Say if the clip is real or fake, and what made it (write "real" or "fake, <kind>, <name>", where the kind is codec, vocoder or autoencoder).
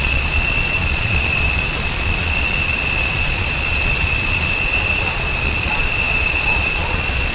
fake, vocoder, Vocos